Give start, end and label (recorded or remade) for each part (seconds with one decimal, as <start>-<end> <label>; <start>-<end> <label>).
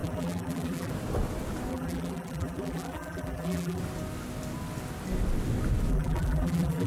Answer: 0.0-0.9 remade; 0.9-1.7 recorded; 1.7-3.8 remade; 3.8-5.9 recorded; 5.9-6.9 remade